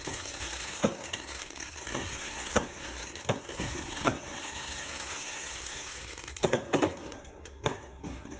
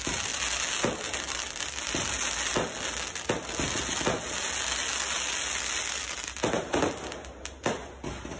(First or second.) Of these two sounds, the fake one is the first